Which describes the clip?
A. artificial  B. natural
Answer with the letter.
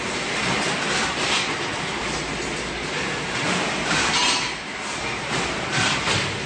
B